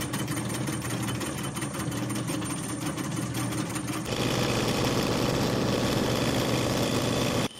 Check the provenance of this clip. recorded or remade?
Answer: recorded